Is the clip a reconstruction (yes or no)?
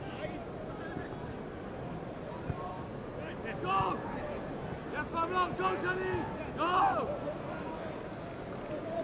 no